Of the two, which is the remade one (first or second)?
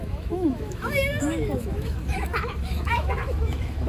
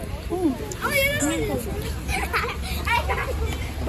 first